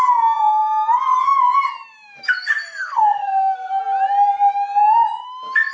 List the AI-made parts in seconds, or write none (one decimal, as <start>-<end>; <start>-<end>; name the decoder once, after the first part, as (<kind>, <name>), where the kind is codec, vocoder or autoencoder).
2.8-3.8 (codec, SNAC)